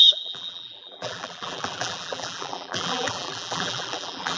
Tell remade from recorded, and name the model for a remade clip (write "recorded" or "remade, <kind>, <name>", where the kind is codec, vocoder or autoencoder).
remade, vocoder, BigVGAN v2